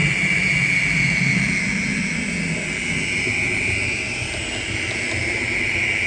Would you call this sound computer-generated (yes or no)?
no